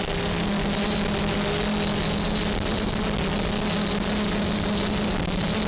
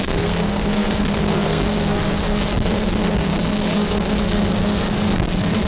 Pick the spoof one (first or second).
second